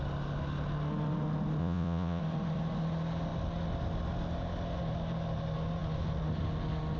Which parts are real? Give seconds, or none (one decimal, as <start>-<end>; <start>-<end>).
0.0-1.6; 2.2-7.0